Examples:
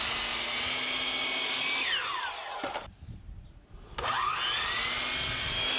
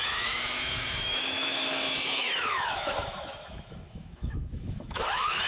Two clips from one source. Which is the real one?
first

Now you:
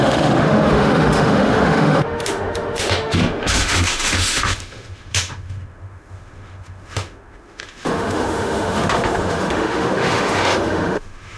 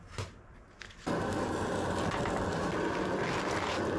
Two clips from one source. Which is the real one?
second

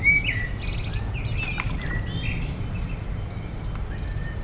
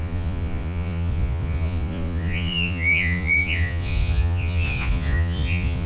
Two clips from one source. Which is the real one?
first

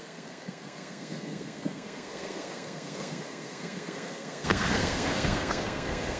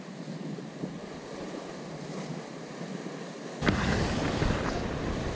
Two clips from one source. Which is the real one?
second